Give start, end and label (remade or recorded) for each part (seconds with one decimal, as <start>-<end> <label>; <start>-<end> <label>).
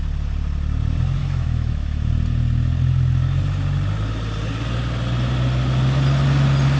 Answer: 0.0-1.2 recorded; 1.2-2.1 remade; 2.1-6.8 recorded